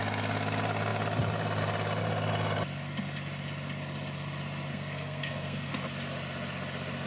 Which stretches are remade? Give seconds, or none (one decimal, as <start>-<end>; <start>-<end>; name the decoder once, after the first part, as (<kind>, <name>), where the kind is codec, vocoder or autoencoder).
4.7-5.7 (codec, SNAC)